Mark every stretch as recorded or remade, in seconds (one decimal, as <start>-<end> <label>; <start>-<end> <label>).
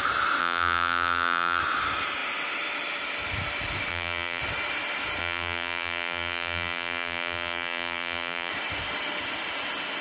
0.0-0.4 recorded; 0.4-1.6 remade; 1.6-3.9 recorded; 3.9-4.4 remade; 4.4-5.2 recorded; 5.2-8.5 remade; 8.5-10.0 recorded